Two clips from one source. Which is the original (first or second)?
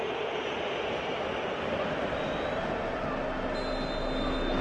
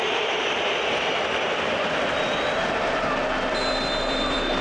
first